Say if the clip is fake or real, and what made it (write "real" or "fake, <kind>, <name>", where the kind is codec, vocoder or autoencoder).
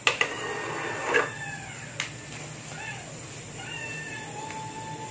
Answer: real